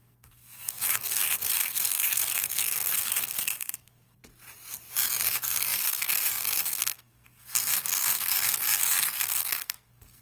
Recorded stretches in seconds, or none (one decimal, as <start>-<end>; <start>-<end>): 4.2-5.3